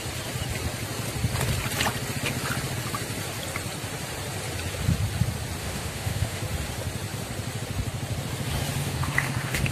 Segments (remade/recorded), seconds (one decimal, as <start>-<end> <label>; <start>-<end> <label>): 0.0-5.6 recorded; 5.6-6.4 remade; 6.4-8.8 recorded; 8.8-9.7 remade